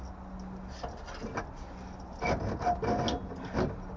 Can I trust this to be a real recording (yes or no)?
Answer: yes